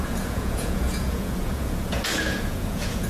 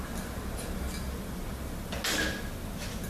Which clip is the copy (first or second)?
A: first